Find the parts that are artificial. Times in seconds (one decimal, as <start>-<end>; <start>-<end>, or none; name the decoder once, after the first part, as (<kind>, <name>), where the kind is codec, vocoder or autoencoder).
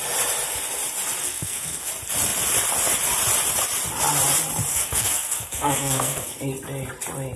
1.2-1.9 (codec, SNAC); 4.7-6.4